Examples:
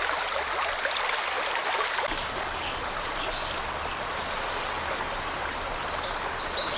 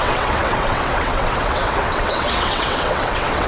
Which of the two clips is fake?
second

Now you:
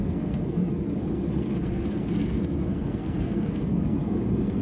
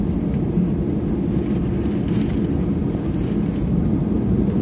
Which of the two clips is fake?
first